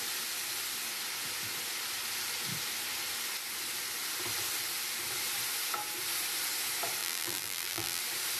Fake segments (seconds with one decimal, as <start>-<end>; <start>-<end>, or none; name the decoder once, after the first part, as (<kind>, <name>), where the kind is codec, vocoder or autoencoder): 7.0-8.0 (vocoder, BigVGAN v2)